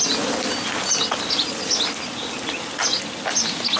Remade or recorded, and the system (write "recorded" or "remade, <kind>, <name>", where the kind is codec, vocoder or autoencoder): recorded